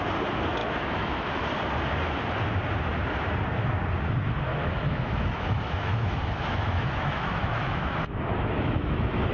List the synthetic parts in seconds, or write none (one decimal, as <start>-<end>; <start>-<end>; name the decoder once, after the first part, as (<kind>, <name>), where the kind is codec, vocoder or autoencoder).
0.6-1.3 (autoencoder, DAC-VAE); 4.5-9.3